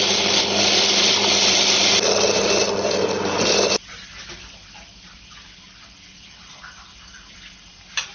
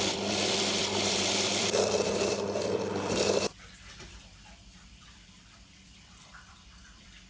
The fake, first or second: second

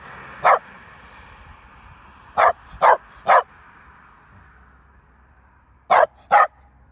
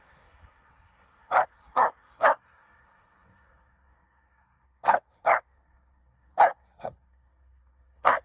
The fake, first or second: second